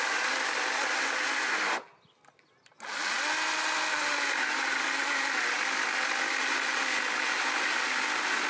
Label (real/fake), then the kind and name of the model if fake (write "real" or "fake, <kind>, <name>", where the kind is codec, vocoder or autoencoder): real